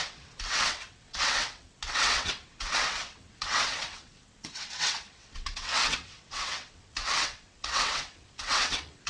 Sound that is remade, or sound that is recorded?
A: remade